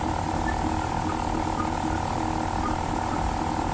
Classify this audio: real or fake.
real